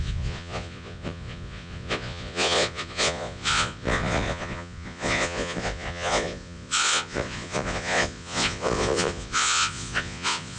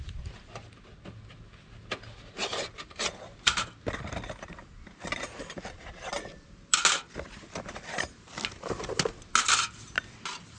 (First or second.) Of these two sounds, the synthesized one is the first